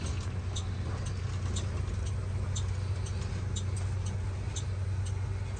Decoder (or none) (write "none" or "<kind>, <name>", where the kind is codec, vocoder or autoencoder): none